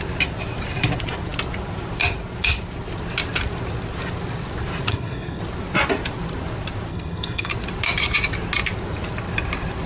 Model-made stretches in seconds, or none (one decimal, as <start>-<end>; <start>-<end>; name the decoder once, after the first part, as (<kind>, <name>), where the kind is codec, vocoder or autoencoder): 4.9-5.4 (codec, SNAC); 6.9-7.5